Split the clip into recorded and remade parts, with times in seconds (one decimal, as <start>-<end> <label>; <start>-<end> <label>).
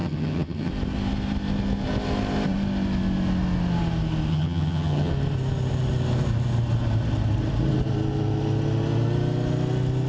0.0-0.7 remade; 0.7-4.3 recorded; 4.3-5.1 remade; 5.1-10.1 recorded